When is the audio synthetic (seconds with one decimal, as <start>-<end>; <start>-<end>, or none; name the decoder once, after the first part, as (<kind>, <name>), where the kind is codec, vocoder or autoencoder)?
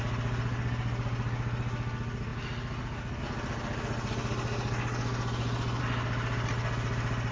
none